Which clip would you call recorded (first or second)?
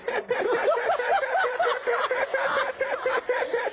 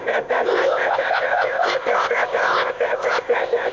first